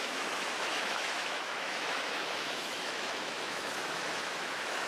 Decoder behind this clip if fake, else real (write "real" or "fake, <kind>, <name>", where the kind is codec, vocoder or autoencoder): fake, autoencoder, DAC-VAE